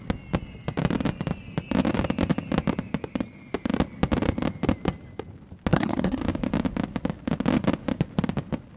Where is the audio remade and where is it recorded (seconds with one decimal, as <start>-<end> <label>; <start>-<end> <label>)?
0.0-5.7 recorded; 5.7-6.2 remade; 6.2-8.8 recorded